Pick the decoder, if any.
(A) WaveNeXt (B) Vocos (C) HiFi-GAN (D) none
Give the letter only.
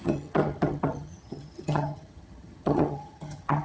C